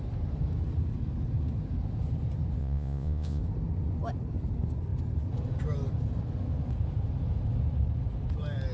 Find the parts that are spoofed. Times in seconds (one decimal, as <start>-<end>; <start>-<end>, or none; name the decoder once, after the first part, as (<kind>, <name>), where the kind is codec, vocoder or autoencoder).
2.6-3.4 (vocoder, Vocos)